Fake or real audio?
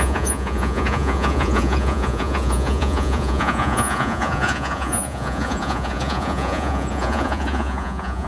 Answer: fake